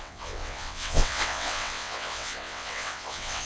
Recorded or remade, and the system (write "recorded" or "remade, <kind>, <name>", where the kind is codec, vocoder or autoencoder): remade, vocoder, WaveNeXt